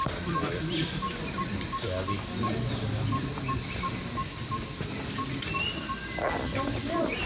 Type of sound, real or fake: real